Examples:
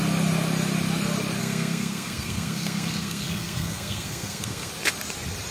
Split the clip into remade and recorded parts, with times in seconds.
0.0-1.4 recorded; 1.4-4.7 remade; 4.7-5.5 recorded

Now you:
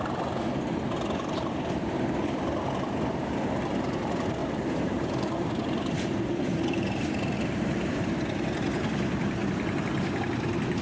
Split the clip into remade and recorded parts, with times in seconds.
0.0-4.4 recorded; 4.4-8.2 remade; 8.2-10.8 recorded